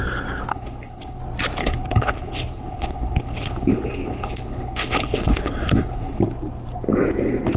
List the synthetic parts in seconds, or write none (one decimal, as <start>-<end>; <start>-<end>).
0.5-1.2; 1.6-6.2